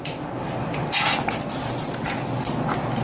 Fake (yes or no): no